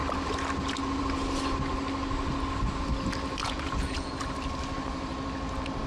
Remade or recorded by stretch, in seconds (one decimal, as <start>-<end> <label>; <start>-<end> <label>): 0.0-3.4 recorded; 3.4-4.1 remade; 4.1-5.9 recorded